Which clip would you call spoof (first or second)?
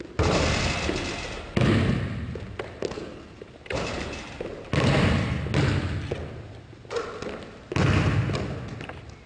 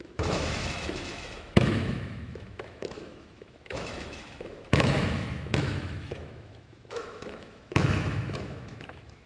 second